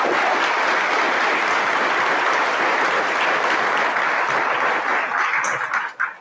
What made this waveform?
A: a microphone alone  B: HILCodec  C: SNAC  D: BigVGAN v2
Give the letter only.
A